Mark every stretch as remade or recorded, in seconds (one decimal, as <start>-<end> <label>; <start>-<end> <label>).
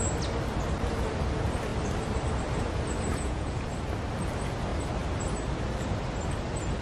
0.0-3.1 recorded; 3.1-3.7 remade; 3.7-6.8 recorded